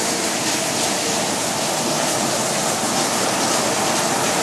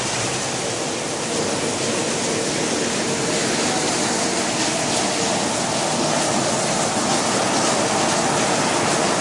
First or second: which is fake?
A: first